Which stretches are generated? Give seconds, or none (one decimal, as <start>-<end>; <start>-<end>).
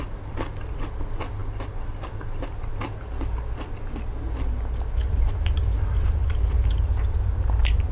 none